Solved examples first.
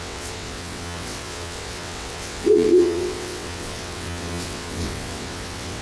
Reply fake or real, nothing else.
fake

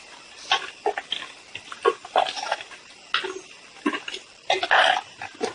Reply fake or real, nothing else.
real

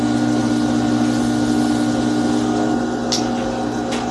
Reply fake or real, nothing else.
real